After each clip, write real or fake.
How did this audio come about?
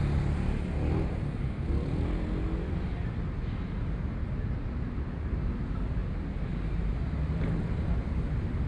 real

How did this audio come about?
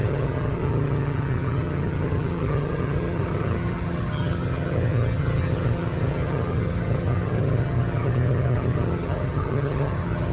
fake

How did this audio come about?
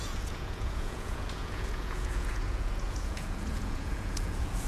fake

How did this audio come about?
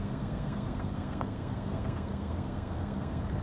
fake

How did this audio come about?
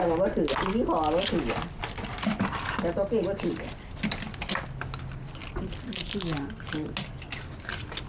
real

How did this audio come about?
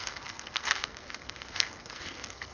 fake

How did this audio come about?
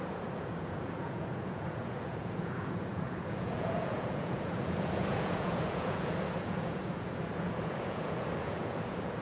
fake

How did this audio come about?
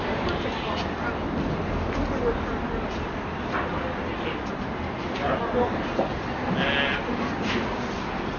real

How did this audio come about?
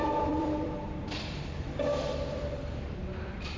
fake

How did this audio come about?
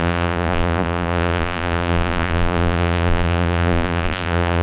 fake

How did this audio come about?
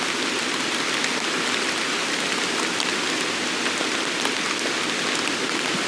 real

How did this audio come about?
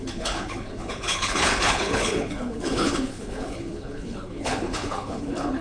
fake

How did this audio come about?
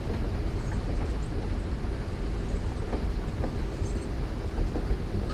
real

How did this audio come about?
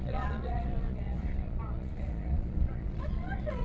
fake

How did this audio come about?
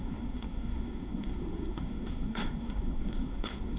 fake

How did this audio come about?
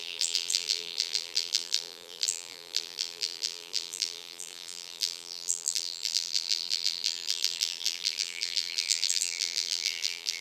fake